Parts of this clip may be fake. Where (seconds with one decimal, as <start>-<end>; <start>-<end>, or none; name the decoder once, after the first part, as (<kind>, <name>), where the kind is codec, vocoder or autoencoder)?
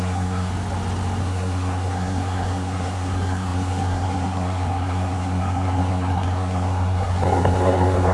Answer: 0.0-0.5 (codec, SNAC); 1.2-8.1